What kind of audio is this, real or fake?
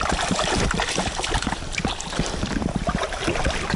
fake